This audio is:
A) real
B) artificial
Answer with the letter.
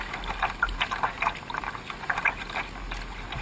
A